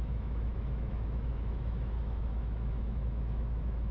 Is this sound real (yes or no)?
no